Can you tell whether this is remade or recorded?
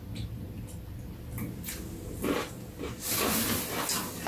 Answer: recorded